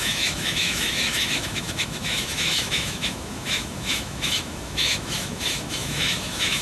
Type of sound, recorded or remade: remade